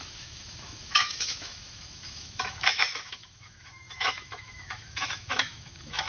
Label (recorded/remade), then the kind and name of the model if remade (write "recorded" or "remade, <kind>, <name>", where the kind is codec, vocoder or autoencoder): remade, autoencoder, DAC-VAE